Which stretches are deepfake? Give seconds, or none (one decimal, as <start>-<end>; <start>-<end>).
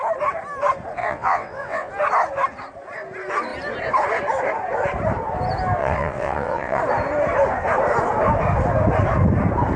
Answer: 1.0-1.9; 5.8-6.8